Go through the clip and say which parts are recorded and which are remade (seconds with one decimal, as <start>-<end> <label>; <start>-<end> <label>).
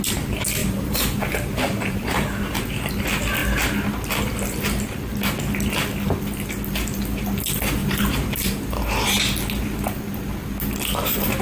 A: 0.0-0.6 recorded; 0.6-2.9 remade; 2.9-7.8 recorded; 7.8-8.8 remade; 8.8-11.4 recorded